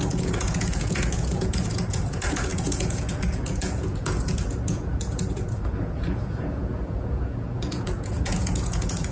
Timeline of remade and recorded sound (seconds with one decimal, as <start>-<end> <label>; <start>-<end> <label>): 0.0-9.1 remade